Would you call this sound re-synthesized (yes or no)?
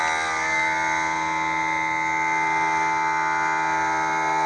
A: no